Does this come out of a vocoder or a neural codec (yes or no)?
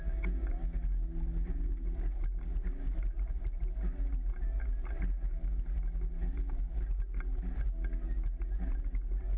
no